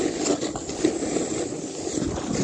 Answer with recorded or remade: recorded